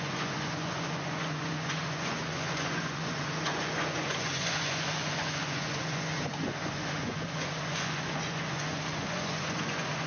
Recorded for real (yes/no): no